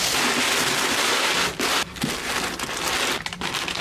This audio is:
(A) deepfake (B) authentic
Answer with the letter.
B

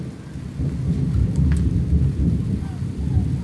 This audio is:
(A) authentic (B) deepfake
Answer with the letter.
A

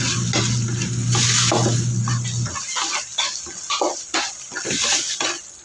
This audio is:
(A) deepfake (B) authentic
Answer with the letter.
B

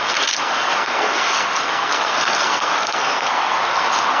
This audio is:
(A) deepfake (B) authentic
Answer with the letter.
A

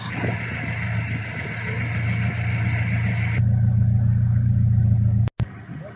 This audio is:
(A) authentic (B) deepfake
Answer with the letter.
A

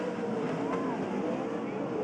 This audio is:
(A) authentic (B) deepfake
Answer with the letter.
A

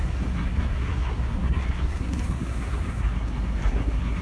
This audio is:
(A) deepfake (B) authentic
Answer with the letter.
A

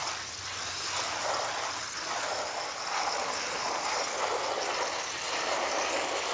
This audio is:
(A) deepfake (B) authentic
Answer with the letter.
B